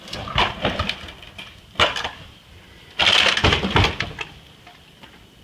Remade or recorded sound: recorded